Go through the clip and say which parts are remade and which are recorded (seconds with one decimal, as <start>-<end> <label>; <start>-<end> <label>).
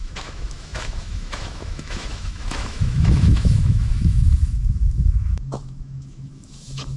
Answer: 0.0-7.0 remade